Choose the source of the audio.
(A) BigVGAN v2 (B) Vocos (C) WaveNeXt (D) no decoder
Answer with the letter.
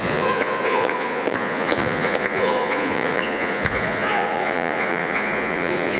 B